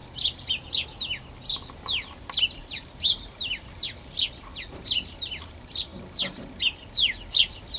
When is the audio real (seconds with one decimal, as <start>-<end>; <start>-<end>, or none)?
0.7-2.6; 3.8-4.5; 5.5-7.8